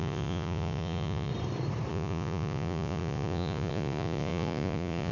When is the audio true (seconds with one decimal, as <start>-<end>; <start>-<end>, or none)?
1.3-1.9

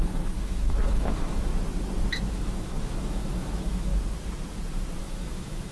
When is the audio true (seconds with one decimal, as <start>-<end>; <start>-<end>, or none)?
1.5-2.3; 3.9-5.0

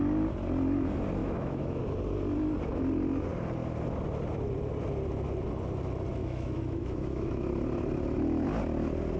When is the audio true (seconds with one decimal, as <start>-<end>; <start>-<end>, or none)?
0.0-1.2; 1.8-6.2; 7.4-9.2

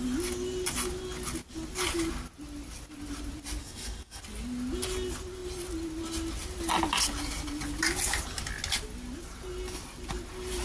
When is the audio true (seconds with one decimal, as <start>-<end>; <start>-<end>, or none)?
0.0-3.6; 4.2-10.6

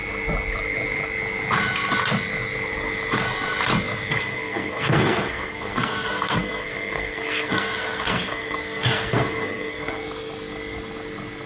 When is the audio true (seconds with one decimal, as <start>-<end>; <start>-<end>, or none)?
0.0-4.2; 10.0-11.5

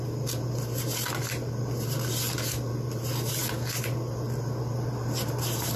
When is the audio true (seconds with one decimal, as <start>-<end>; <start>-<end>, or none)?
0.0-5.8

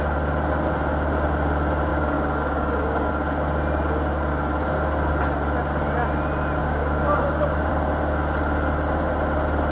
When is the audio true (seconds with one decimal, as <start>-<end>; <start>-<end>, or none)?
0.0-1.9; 3.1-6.6; 7.7-9.7